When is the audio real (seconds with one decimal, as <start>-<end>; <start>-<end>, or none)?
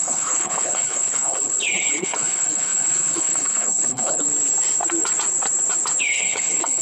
4.3-6.0